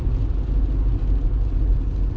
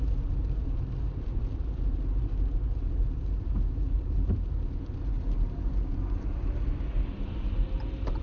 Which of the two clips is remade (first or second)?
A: second